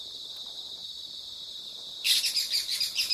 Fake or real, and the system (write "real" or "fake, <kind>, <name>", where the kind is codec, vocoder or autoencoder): real